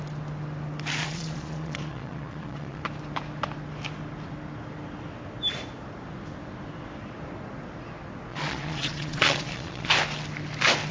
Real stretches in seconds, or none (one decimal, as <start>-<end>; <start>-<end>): 0.0-1.0; 2.8-8.3; 9.9-10.9